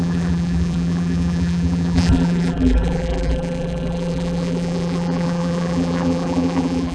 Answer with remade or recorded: remade